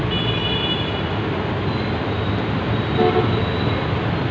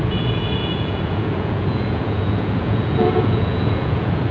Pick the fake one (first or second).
second